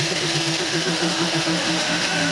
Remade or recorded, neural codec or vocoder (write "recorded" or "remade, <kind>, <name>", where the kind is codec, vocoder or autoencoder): remade, autoencoder, DAC-VAE